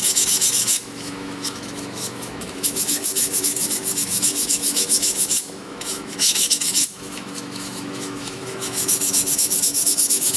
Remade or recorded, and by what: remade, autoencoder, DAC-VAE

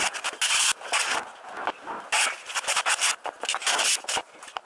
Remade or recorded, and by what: recorded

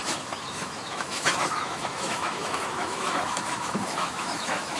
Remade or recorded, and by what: remade, autoencoder, DAC-VAE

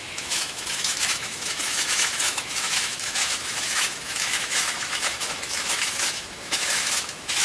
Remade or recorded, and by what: remade, autoencoder, DAC-VAE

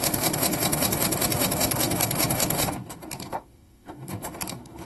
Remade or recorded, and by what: remade, autoencoder, DAC-VAE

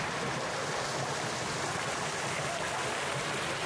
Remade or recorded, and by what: recorded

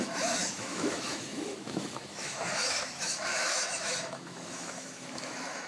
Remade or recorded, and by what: remade, autoencoder, DAC-VAE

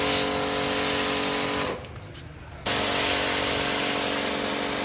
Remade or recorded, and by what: recorded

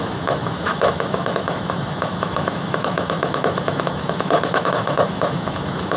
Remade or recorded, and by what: remade, autoencoder, DAC-VAE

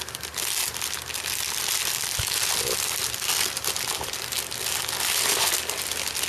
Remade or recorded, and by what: recorded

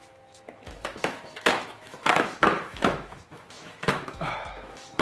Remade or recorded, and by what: remade, autoencoder, DAC-VAE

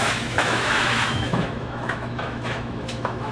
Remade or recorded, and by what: remade, autoencoder, DAC-VAE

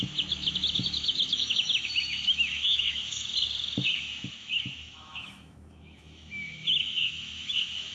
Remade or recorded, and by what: remade, autoencoder, DAC-VAE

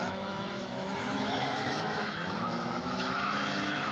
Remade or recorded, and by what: remade, autoencoder, DAC-VAE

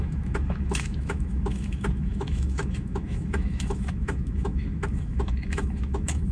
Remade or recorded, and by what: remade, autoencoder, DAC-VAE